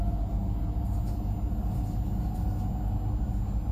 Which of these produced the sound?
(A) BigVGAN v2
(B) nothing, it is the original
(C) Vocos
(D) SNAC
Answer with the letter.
B